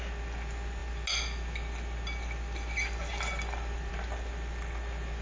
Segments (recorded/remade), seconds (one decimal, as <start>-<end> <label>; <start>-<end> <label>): 0.0-5.2 recorded